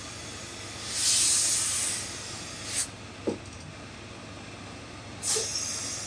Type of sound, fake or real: real